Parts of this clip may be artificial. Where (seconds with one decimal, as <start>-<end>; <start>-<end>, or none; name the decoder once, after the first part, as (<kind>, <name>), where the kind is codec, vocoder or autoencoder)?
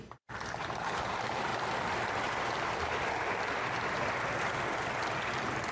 none